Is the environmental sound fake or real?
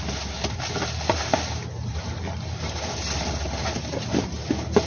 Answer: real